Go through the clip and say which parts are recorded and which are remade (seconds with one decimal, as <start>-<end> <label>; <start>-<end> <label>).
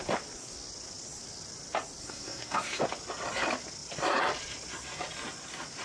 0.0-2.0 recorded; 2.0-2.8 remade; 2.8-5.8 recorded